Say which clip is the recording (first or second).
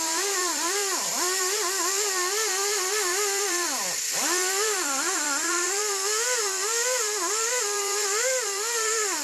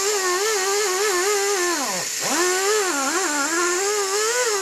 second